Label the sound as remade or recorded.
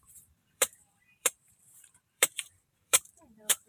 remade